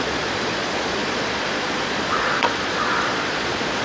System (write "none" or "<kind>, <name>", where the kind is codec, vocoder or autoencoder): vocoder, Vocos